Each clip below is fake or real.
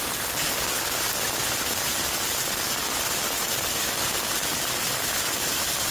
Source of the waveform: real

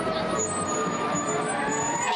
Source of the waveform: real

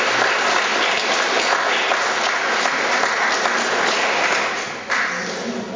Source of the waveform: real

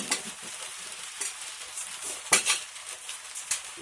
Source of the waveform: real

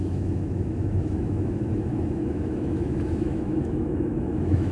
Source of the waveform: fake